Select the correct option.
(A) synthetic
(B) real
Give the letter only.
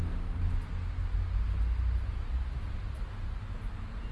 B